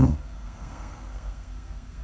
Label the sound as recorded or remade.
remade